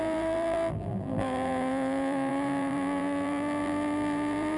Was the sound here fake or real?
fake